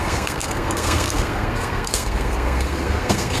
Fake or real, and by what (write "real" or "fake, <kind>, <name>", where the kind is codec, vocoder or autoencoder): fake, codec, SNAC